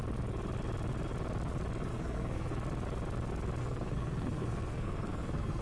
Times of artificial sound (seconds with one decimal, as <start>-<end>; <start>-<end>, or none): 1.9-2.5; 3.6-5.6